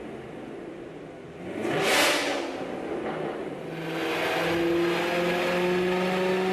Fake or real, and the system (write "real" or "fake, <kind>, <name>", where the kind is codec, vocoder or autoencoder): real